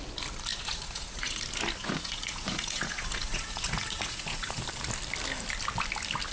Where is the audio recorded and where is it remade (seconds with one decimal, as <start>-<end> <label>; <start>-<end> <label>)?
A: 0.0-0.5 recorded; 0.5-1.4 remade; 1.4-1.8 recorded; 1.8-4.6 remade; 4.6-6.3 recorded